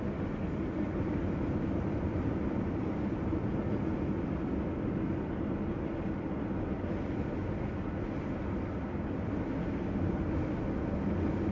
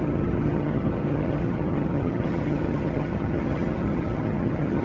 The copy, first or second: second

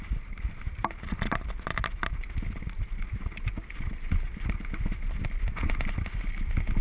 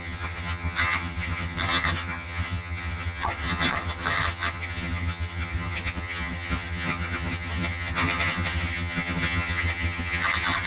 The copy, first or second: second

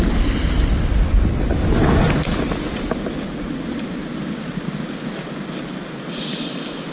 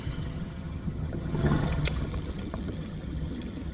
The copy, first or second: second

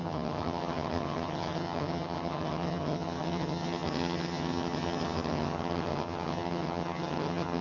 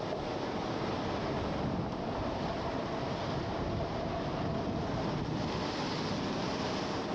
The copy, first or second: first